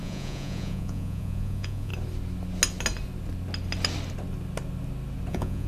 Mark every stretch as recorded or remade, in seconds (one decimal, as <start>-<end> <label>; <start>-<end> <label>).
0.0-1.9 remade; 1.9-5.3 recorded; 5.3-5.7 remade